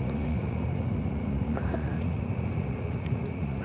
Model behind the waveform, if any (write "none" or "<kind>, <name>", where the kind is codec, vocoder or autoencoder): vocoder, Vocos